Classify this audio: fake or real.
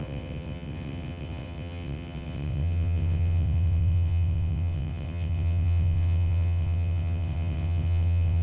fake